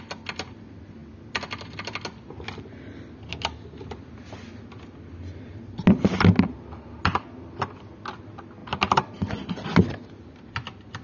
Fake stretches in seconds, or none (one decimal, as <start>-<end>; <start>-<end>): none